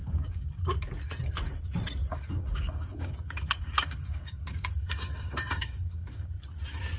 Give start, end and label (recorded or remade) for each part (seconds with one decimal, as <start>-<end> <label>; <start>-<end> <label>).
0.0-0.6 remade; 0.6-2.1 recorded; 2.1-6.3 remade; 6.3-7.0 recorded